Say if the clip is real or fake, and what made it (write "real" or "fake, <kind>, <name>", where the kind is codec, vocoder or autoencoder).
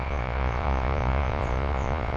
fake, vocoder, Vocos